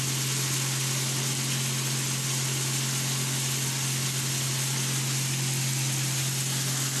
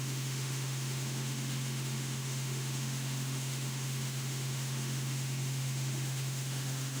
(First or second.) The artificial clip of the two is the second